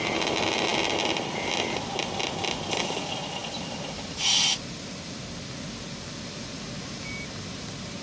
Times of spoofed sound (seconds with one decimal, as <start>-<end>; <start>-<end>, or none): none